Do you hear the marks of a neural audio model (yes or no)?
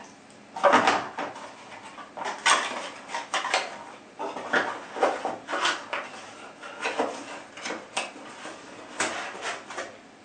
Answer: no